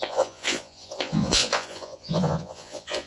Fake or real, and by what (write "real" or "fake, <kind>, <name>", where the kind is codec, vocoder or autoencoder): fake, vocoder, Vocos